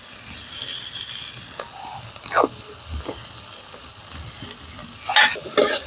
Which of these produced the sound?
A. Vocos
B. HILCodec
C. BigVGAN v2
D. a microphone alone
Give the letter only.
D